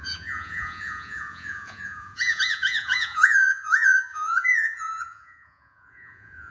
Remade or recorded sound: remade